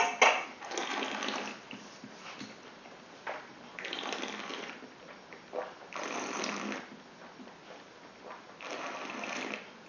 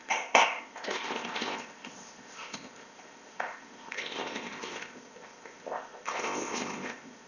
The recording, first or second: first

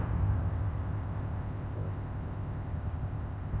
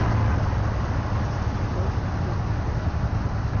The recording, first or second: second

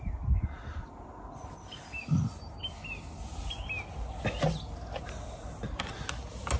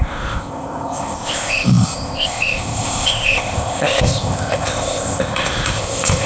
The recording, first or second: first